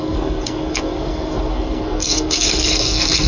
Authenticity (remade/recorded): remade